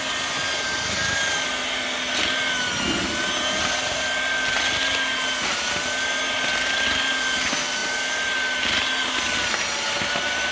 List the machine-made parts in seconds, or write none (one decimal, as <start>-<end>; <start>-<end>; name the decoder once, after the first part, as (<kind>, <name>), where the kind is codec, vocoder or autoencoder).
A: none